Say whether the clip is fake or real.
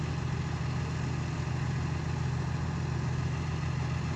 real